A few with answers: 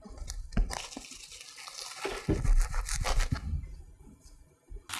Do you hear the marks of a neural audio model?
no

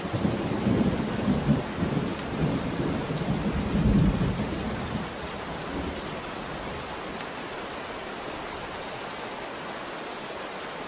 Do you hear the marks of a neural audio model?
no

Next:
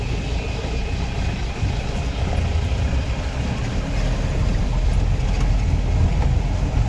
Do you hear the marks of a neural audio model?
no